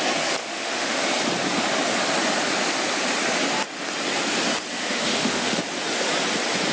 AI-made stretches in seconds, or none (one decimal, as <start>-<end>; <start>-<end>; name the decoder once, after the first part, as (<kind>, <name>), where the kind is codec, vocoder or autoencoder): 0.4-1.0 (autoencoder, DAC-VAE); 4.8-5.6